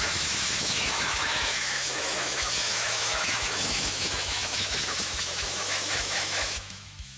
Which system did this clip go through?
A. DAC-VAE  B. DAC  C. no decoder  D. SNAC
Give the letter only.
A